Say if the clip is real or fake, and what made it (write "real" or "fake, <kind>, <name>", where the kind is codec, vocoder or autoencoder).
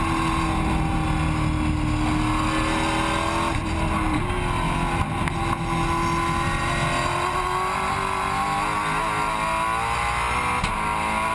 real